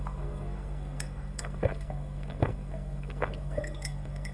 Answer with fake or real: fake